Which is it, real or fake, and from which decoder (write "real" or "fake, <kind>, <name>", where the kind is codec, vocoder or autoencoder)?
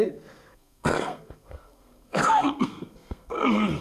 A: fake, codec, SNAC